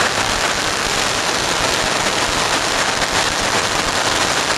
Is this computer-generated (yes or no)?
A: no